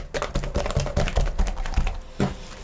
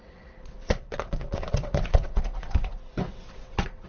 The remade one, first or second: second